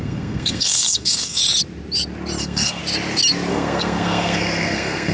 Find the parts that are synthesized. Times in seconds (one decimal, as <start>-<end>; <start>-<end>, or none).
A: 0.0-1.4; 2.4-2.8; 3.5-5.1